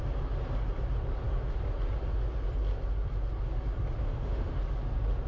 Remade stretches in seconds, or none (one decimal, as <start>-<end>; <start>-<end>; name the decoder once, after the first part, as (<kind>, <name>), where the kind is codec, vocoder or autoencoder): 4.0-4.6 (autoencoder, DAC-VAE)